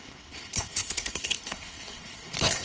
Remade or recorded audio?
remade